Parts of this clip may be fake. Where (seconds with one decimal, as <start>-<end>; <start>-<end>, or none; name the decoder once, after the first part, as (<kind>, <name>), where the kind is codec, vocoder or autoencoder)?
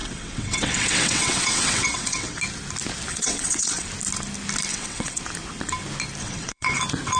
0.0-2.4 (vocoder, WaveNeXt); 3.1-3.9; 4.7-5.2; 6.2-6.8